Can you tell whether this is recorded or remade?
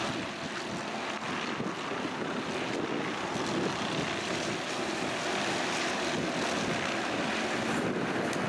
recorded